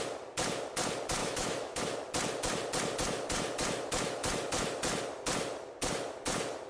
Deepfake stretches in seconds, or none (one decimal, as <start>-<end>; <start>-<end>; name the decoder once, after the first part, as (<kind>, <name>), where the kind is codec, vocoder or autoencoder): 1.2-1.8 (autoencoder, DAC-VAE)